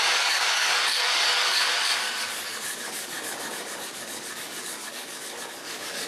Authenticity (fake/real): fake